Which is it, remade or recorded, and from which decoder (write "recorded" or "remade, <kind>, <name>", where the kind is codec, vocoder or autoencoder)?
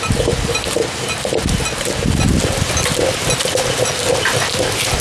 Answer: recorded